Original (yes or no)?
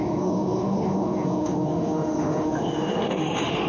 no